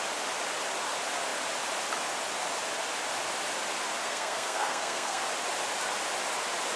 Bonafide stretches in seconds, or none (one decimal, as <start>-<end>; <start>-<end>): 0.0-4.0; 5.2-6.8